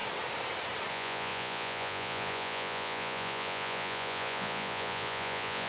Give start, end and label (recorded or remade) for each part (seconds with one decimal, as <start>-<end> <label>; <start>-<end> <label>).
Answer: 0.0-0.9 recorded; 0.9-5.7 remade